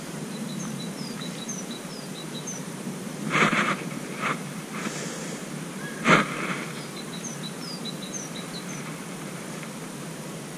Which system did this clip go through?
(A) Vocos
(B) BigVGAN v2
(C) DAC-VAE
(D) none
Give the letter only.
B